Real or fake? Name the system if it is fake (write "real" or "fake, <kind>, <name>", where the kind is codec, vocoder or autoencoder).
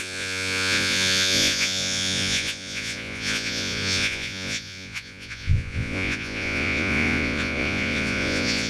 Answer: fake, vocoder, Vocos